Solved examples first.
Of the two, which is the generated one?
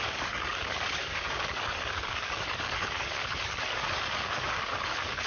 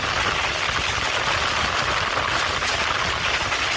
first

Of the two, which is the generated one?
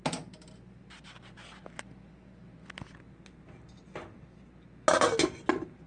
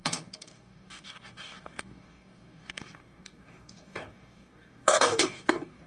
second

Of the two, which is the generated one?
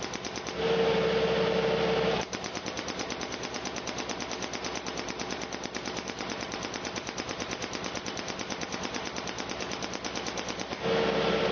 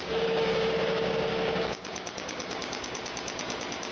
second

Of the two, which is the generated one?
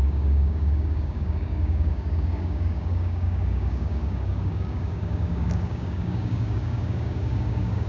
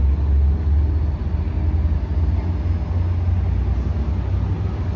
first